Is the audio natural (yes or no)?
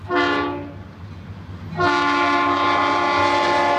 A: yes